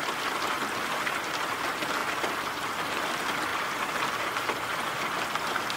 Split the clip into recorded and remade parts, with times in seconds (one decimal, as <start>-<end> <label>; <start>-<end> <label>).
0.0-5.8 recorded